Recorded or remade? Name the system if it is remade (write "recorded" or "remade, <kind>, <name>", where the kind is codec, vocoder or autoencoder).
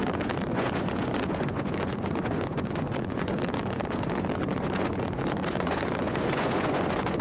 remade, vocoder, Vocos